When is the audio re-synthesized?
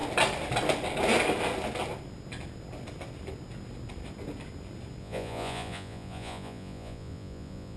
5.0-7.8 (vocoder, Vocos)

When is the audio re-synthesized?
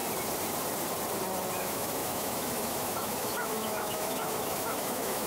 1.6-5.3 (autoencoder, DAC-VAE)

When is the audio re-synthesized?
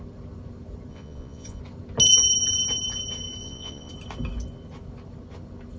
0.9-1.6 (vocoder, Vocos); 3.4-3.9